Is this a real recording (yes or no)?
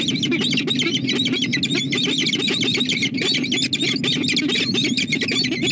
yes